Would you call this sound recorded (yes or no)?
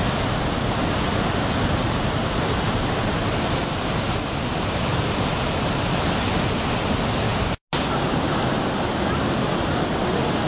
yes